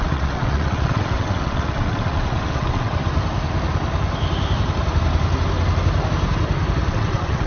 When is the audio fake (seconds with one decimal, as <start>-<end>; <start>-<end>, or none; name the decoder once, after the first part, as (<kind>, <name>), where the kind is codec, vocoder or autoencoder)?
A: 0.0-3.0 (vocoder, WaveNeXt); 6.9-7.5